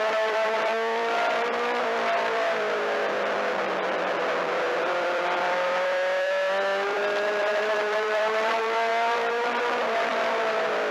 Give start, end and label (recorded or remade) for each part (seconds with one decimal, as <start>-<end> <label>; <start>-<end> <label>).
0.0-10.9 remade